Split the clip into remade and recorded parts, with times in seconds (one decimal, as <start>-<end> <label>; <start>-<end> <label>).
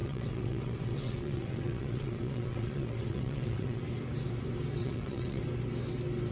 0.0-3.8 remade; 3.8-4.8 recorded; 4.8-5.4 remade; 5.4-6.3 recorded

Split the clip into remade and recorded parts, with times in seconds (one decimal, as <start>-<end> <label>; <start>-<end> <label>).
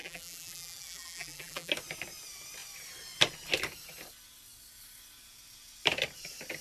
0.0-1.7 remade; 1.7-6.6 recorded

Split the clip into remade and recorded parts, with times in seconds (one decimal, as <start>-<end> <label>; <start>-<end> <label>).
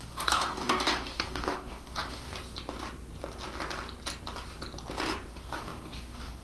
0.0-2.3 remade; 2.3-5.3 recorded; 5.3-6.4 remade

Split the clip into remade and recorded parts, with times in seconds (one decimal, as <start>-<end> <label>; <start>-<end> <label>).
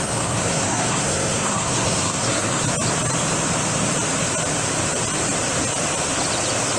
0.0-2.6 remade; 2.6-6.8 recorded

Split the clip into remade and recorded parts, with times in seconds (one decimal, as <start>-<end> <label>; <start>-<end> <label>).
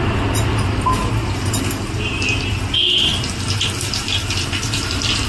0.0-5.3 recorded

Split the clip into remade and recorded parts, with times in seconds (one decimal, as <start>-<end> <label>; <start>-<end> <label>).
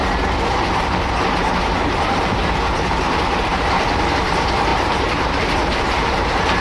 0.0-1.6 recorded; 1.6-6.6 remade